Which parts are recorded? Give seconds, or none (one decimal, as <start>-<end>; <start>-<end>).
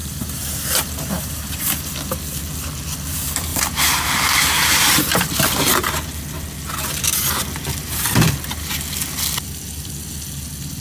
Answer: 1.6-3.5; 5.7-10.8